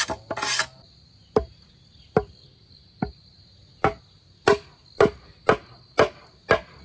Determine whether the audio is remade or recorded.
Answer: recorded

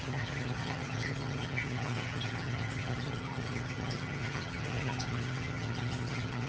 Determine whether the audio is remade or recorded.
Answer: remade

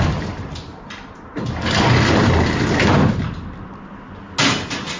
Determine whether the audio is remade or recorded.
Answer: recorded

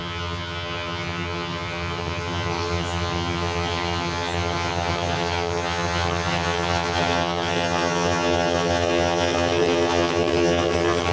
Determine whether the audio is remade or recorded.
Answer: remade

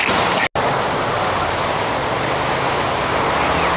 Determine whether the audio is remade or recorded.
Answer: recorded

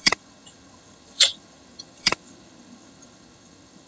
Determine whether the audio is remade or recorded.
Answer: remade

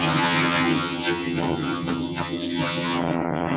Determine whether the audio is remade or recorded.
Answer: remade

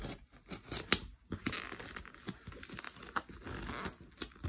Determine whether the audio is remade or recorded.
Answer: recorded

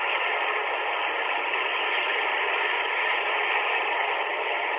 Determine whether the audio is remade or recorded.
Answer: recorded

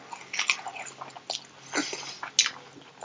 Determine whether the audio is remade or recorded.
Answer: recorded